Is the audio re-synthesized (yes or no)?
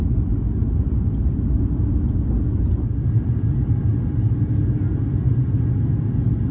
no